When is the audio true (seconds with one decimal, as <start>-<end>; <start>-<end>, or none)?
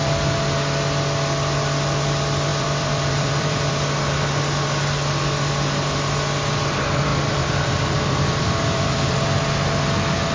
0.0-2.5; 3.7-7.1; 9.2-10.3